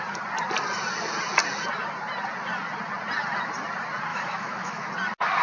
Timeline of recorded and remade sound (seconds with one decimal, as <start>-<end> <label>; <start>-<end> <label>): 0.0-4.1 recorded; 4.1-4.9 remade; 4.9-5.4 recorded